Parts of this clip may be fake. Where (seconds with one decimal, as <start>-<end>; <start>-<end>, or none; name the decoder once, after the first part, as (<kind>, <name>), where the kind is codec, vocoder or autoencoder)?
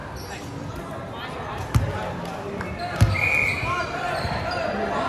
none